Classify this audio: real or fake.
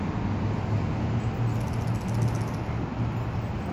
real